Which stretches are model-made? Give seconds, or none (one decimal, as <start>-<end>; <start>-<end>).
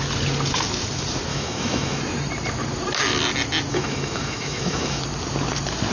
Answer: 1.3-2.0; 3.7-5.0